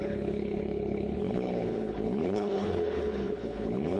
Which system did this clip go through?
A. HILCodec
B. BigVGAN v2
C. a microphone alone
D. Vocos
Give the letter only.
A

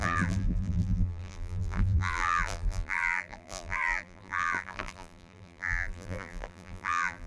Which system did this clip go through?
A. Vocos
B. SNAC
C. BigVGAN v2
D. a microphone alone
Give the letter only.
C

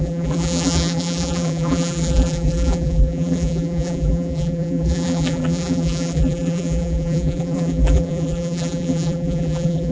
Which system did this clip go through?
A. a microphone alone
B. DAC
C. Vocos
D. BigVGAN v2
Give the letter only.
D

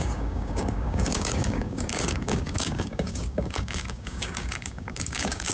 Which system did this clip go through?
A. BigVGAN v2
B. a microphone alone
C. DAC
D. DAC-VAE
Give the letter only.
C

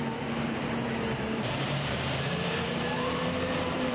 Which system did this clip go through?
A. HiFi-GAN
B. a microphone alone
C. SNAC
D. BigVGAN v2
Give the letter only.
D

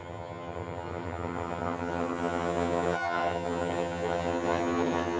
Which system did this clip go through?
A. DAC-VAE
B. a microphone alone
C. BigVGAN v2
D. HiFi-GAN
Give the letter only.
D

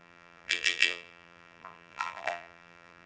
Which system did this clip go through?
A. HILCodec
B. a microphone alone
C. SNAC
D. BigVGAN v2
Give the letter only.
D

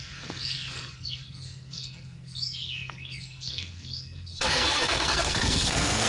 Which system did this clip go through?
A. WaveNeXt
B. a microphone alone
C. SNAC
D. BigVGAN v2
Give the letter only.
C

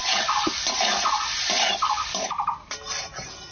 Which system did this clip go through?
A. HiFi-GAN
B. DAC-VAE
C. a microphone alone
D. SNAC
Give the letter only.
C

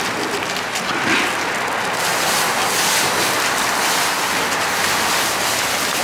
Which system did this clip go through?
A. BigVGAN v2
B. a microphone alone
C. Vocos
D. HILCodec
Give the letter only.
B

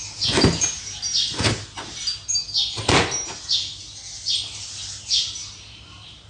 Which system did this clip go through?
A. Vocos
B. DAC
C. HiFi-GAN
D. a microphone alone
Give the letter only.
D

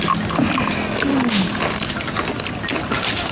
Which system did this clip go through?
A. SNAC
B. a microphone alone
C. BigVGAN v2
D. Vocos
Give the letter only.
B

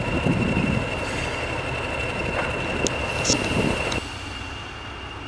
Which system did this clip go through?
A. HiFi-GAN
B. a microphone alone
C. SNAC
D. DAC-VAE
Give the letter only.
B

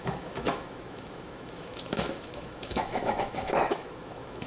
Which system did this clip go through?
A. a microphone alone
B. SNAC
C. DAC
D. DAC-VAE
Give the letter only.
D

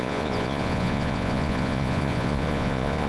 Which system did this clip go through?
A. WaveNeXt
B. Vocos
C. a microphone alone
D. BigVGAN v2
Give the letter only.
B